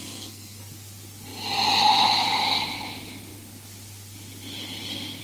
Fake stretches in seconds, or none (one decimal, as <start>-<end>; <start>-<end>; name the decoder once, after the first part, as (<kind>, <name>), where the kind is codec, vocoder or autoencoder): 0.0-0.6 (codec, SNAC)